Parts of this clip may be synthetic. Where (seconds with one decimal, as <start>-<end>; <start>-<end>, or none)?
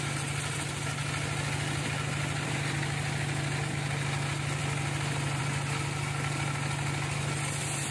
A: none